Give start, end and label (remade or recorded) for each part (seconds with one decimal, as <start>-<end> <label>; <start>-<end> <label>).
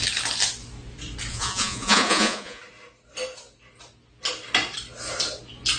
0.0-1.3 recorded; 1.3-2.6 remade; 2.6-5.8 recorded